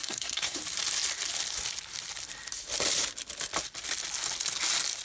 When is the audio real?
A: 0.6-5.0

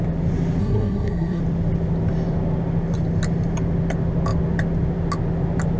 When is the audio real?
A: 0.0-0.6; 1.4-5.8